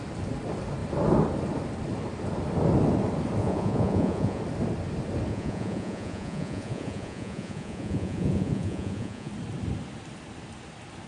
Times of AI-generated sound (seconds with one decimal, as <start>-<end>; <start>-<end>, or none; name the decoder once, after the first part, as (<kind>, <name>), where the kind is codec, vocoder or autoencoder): 3.4-4.4 (vocoder, Vocos); 5.3-9.3